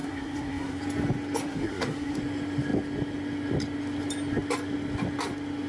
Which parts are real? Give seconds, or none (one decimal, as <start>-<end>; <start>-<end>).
0.8-1.4; 2.2-5.7